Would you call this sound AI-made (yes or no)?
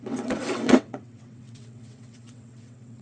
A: yes